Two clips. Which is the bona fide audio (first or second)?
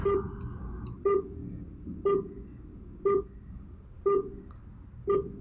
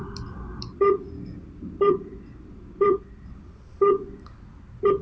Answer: first